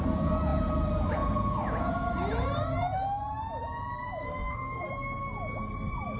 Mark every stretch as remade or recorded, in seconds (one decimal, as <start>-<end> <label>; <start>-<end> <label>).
0.0-4.2 recorded; 4.2-4.9 remade; 4.9-6.2 recorded